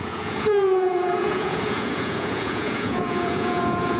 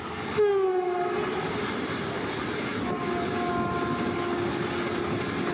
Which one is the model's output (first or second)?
first